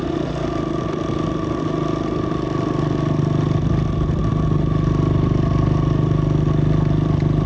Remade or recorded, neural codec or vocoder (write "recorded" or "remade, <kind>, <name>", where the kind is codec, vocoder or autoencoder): recorded